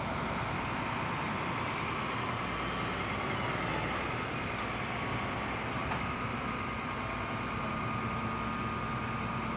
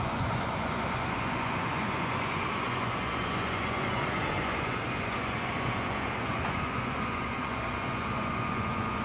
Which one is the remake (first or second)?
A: second